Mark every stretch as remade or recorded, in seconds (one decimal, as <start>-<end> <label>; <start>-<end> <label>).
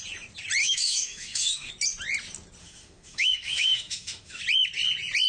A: 0.0-0.6 recorded; 0.6-1.7 remade; 1.7-2.6 recorded; 2.6-4.4 remade; 4.4-5.3 recorded